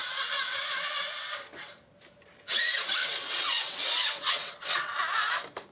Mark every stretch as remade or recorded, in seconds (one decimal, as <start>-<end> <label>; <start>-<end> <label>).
0.0-1.3 remade; 1.3-3.0 recorded; 3.0-5.0 remade; 5.0-5.7 recorded